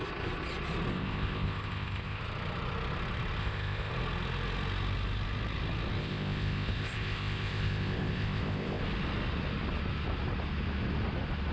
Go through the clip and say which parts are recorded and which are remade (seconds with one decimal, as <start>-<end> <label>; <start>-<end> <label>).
0.0-0.9 recorded; 0.9-2.2 remade; 2.2-3.4 recorded; 3.4-3.9 remade; 3.9-6.0 recorded; 6.0-8.8 remade; 8.8-11.5 recorded